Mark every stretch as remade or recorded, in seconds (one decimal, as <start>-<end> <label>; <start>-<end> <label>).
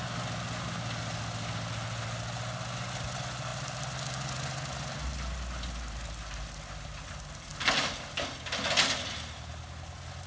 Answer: 0.0-10.3 recorded